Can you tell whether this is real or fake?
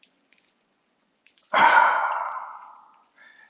fake